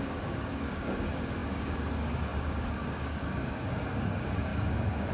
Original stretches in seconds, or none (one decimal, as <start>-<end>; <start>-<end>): none